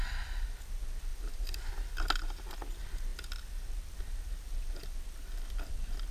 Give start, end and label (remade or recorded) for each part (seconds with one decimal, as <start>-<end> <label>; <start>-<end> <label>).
0.0-1.1 recorded; 1.1-1.7 remade; 1.7-6.1 recorded